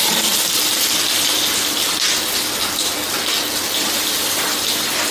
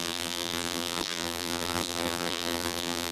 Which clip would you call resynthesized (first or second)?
second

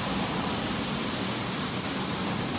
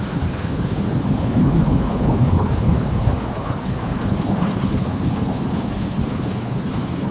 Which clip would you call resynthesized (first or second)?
second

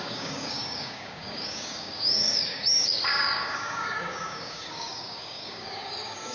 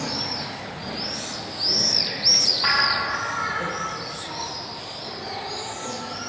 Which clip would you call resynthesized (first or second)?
first